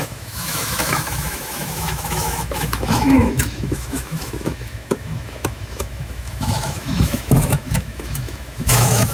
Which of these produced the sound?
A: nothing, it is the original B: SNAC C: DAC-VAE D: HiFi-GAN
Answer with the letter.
C